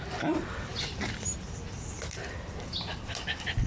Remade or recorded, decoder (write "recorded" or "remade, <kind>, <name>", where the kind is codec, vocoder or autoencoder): recorded